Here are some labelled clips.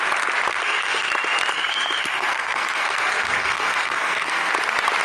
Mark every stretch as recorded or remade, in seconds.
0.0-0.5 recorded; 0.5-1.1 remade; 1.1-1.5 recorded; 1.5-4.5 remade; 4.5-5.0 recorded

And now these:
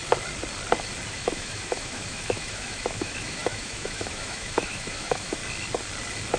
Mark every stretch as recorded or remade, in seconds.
0.0-1.1 recorded; 1.1-5.4 remade; 5.4-6.4 recorded

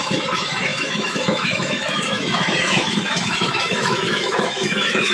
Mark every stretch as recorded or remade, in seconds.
0.0-5.1 remade

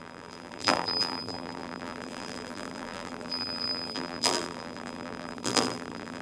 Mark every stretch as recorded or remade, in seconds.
0.0-6.2 remade

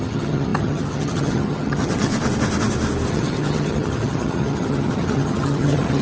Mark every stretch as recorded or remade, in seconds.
0.0-2.1 remade; 2.1-3.1 recorded; 3.1-6.0 remade

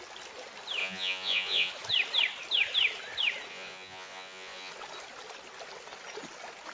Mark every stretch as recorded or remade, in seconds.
0.0-0.8 recorded; 0.8-1.7 remade; 1.7-3.5 recorded; 3.5-4.7 remade; 4.7-6.7 recorded

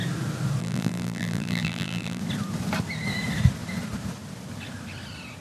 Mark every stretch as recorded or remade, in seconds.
0.0-0.6 recorded; 0.6-2.2 remade; 2.2-5.4 recorded